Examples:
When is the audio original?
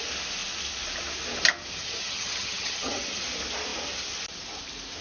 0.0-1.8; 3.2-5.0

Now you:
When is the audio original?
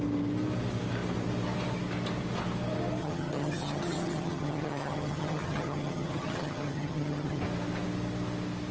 0.0-3.0; 7.4-8.7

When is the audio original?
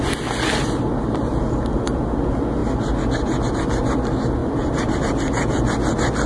0.0-6.3